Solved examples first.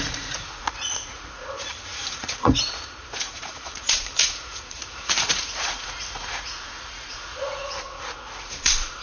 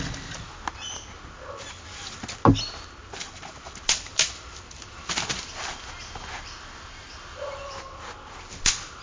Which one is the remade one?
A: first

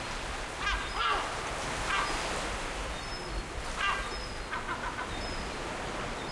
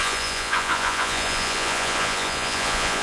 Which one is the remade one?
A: second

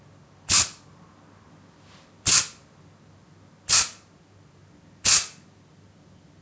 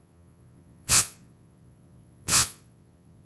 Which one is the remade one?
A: second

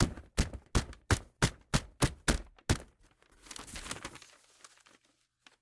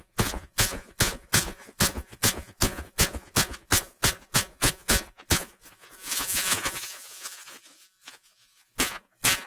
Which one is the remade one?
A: second